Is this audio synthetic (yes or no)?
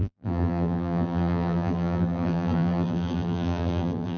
yes